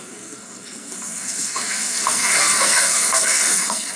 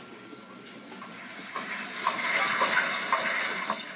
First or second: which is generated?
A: first